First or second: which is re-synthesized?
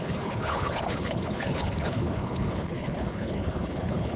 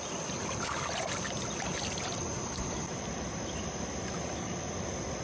first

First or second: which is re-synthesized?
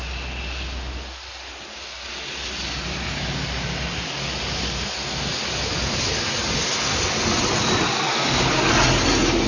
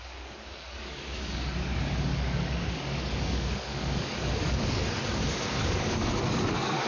second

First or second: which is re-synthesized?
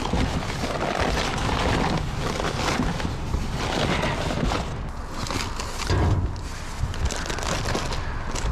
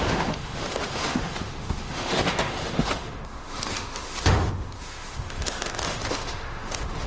second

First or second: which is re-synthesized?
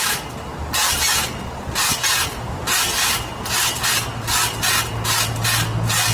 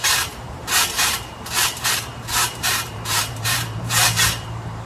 second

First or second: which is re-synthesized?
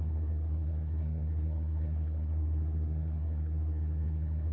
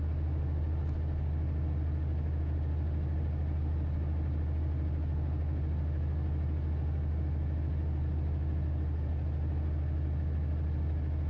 first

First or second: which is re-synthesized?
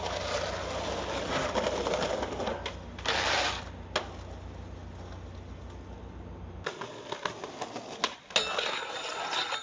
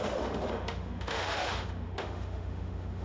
second